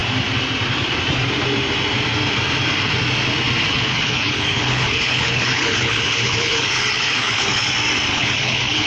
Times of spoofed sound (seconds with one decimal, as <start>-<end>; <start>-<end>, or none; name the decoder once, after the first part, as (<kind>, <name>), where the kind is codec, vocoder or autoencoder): 3.7-7.7 (codec, HILCodec); 8.1-8.9